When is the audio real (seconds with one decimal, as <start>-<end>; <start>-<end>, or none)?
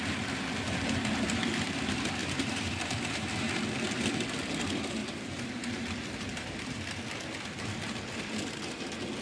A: 0.0-2.2; 3.3-5.0; 5.8-6.3; 6.9-9.2